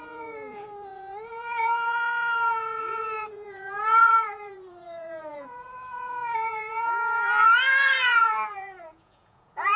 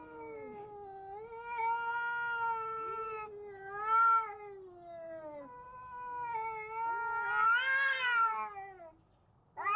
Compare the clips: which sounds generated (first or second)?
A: first